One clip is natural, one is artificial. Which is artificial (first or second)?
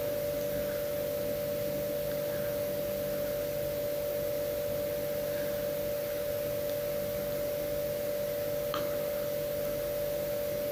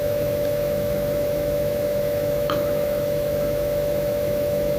second